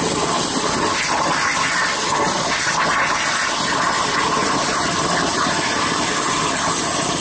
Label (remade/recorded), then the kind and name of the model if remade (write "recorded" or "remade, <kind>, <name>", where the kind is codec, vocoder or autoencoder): recorded